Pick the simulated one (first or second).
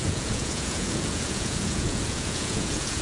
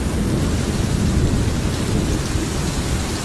first